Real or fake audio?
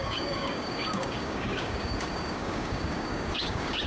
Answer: fake